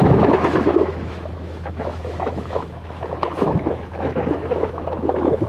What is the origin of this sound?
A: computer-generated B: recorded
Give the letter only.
A